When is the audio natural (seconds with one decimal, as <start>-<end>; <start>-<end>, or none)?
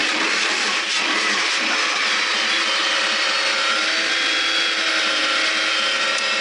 0.0-6.4